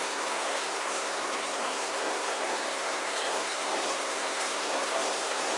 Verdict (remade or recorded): remade